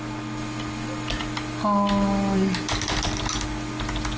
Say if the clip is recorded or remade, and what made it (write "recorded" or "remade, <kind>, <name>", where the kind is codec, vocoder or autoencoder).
recorded